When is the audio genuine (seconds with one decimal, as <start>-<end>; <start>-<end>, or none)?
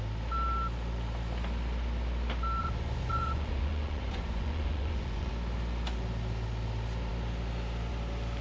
0.0-2.6; 5.3-8.4